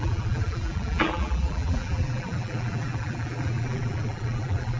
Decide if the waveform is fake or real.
fake